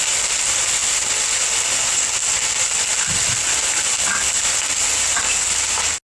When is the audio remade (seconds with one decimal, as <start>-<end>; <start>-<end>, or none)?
none